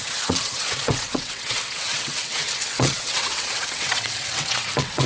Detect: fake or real fake